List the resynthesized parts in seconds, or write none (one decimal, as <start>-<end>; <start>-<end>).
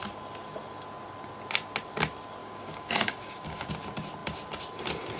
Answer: 2.4-3.7